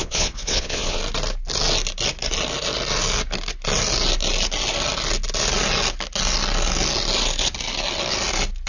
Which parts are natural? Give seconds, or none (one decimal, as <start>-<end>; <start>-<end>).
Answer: 1.0-8.7